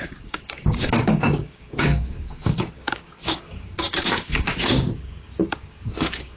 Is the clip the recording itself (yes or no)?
no